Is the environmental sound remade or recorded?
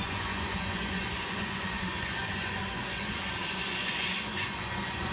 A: remade